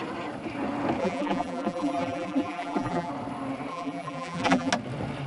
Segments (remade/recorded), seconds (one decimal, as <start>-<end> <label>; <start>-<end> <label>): 0.0-1.0 recorded; 1.0-3.1 remade; 3.1-3.7 recorded; 3.7-4.7 remade; 4.7-5.3 recorded